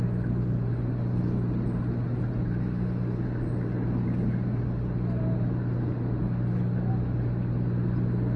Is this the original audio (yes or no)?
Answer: yes